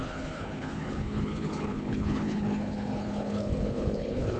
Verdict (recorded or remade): remade